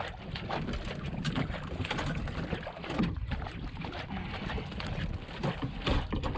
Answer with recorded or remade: recorded